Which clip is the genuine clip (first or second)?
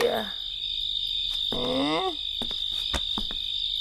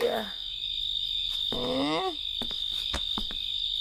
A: first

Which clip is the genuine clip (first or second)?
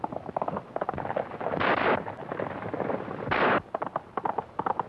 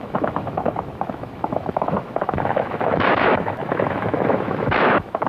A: first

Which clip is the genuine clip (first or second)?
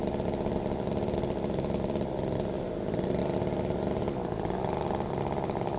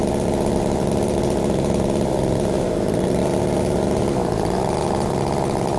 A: second